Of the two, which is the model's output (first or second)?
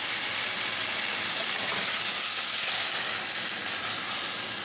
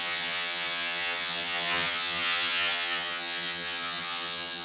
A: second